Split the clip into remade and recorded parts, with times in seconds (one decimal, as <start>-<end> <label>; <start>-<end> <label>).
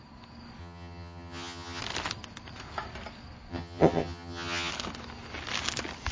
0.0-0.6 recorded; 0.6-1.8 remade; 1.8-3.5 recorded; 3.5-4.7 remade; 4.7-6.1 recorded